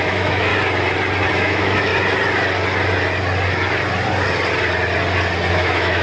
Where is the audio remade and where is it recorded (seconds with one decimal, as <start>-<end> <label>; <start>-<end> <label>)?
0.0-0.5 remade; 0.5-1.3 recorded; 1.3-1.9 remade; 1.9-5.5 recorded; 5.5-6.0 remade